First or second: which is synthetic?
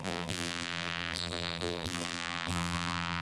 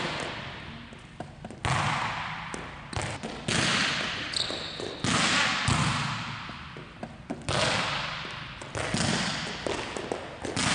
first